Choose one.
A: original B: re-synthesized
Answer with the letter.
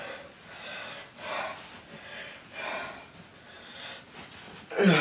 A